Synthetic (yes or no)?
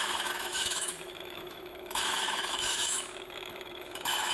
yes